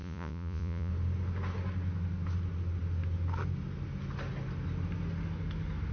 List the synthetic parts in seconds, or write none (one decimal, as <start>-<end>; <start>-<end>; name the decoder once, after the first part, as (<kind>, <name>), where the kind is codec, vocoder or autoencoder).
0.0-0.9 (vocoder, Vocos)